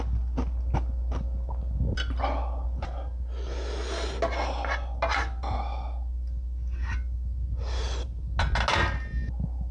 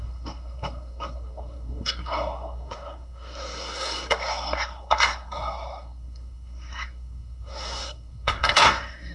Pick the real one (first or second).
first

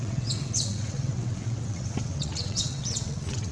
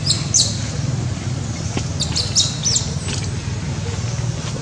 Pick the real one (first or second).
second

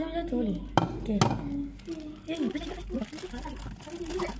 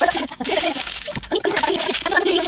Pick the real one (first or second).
first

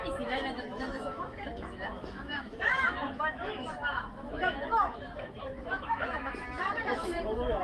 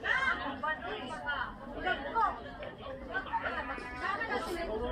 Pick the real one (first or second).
second